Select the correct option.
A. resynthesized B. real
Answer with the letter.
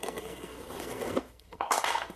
A